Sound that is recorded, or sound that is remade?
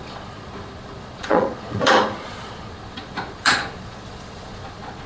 remade